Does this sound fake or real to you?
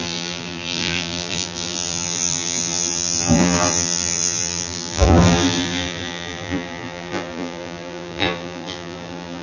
fake